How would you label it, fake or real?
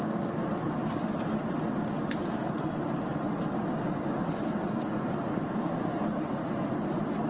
real